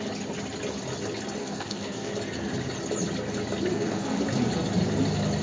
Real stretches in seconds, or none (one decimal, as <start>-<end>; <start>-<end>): 0.0-1.4; 2.1-3.7; 4.2-5.4